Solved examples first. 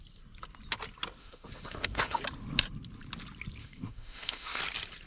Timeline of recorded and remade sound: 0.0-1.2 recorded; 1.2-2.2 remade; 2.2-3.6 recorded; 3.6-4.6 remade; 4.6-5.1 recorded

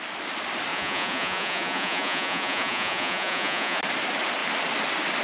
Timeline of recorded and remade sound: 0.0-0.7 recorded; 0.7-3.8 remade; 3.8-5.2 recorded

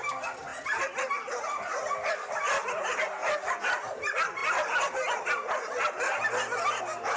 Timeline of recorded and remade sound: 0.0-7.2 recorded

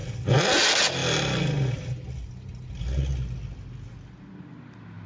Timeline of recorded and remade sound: 0.0-5.1 recorded

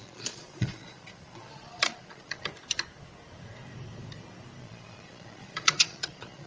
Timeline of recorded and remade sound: 0.0-2.5 remade; 2.5-4.6 recorded; 4.6-6.5 remade